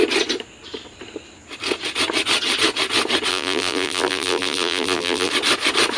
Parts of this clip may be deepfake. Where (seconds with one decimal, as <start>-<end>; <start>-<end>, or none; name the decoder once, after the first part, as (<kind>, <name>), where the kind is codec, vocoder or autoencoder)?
3.3-5.3 (vocoder, BigVGAN v2)